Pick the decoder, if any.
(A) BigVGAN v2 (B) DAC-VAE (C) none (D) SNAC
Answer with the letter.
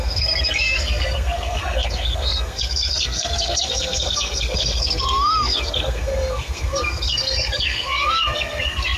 D